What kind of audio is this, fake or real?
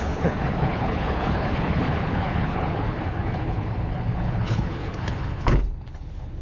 fake